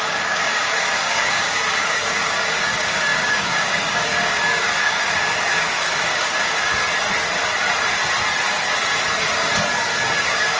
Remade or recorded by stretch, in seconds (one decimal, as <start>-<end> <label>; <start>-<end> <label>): 0.0-6.8 remade; 6.8-10.1 recorded; 10.1-10.6 remade